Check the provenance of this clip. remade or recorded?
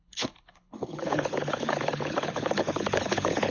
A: remade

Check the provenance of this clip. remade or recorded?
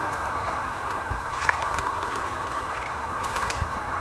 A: remade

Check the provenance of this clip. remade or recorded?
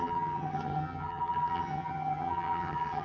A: remade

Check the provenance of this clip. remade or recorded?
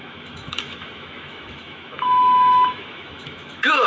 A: remade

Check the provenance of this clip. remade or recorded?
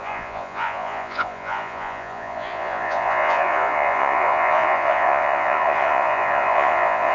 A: remade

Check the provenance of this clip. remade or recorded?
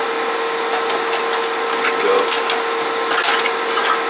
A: recorded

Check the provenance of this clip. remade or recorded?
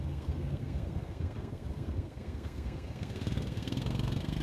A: remade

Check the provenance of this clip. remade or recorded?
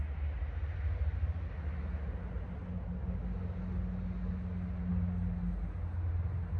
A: recorded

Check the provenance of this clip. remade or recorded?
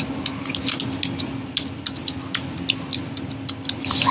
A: recorded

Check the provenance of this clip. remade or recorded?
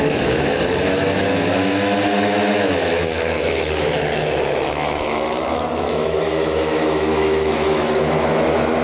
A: remade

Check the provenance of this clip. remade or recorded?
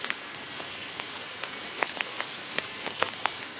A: remade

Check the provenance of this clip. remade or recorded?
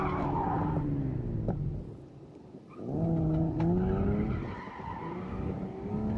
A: recorded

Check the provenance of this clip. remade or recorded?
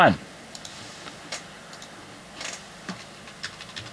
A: recorded